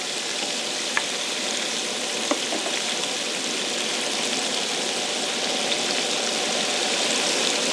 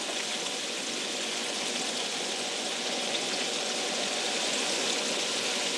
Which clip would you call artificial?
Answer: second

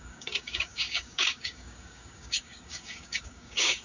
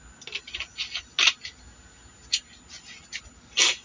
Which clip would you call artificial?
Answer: first